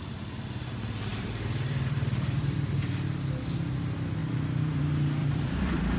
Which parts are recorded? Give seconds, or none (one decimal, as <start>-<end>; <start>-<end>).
0.0-1.1; 2.3-4.2; 4.8-5.2